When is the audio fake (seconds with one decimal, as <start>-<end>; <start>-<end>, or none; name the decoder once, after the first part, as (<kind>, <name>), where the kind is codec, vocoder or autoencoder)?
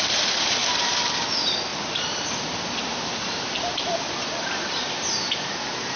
0.6-1.2 (vocoder, BigVGAN v2); 1.7-5.3